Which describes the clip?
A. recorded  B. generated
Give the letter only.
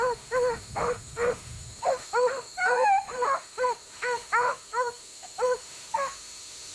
B